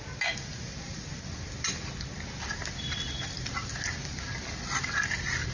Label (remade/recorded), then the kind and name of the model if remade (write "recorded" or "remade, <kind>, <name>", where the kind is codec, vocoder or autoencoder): recorded